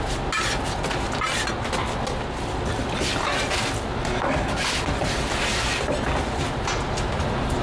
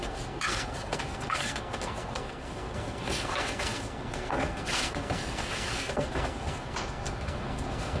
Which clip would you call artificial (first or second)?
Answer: second